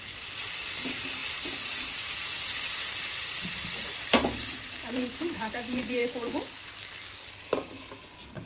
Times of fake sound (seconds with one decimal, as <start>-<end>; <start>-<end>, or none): 0.0-6.0; 8.1-8.5

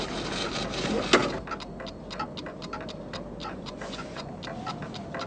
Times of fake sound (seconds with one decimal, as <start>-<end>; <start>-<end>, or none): 3.4-4.3

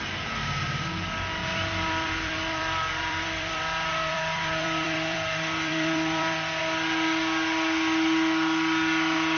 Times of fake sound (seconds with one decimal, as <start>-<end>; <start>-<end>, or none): 1.4-6.6

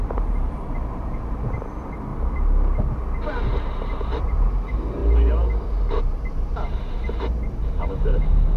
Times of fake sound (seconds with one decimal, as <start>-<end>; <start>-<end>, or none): 0.0-2.1; 3.4-5.0; 5.9-8.6

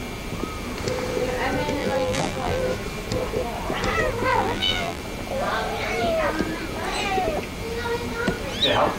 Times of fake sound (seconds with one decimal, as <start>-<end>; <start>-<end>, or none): 1.8-2.6; 4.3-5.0

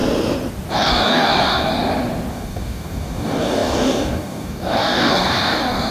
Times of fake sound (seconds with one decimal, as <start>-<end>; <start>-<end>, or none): 0.7-1.7; 2.3-5.9

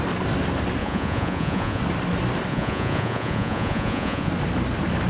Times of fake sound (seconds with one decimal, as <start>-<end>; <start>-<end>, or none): 0.8-1.8; 2.5-4.3

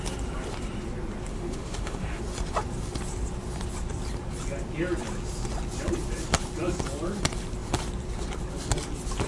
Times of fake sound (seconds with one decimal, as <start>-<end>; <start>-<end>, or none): 1.3-2.2